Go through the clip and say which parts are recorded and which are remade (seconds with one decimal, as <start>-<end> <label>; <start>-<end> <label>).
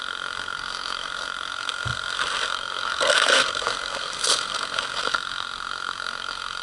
0.0-6.6 remade